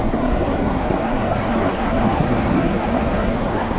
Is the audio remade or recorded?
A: remade